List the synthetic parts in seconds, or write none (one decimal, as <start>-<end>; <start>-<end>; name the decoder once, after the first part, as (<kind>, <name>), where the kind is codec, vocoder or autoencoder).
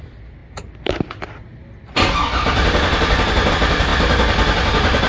none